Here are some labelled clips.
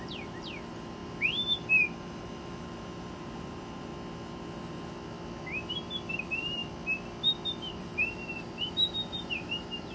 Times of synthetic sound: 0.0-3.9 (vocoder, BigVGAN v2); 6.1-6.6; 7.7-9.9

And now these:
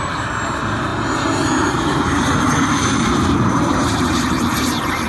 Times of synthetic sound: 0.0-0.9 (vocoder, BigVGAN v2); 1.7-5.1